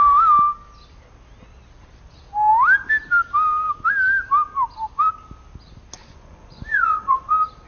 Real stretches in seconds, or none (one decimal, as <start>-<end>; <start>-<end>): 0.0-6.0; 7.3-7.7